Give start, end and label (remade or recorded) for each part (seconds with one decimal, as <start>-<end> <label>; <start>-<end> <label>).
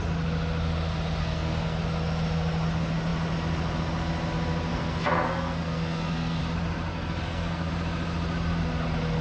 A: 0.0-1.2 recorded; 1.2-1.8 remade; 1.8-4.7 recorded; 4.7-6.4 remade; 6.4-6.9 recorded; 6.9-7.7 remade; 7.7-9.2 recorded